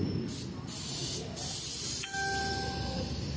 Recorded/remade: recorded